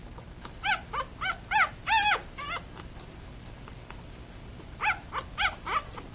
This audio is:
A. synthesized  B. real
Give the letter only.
B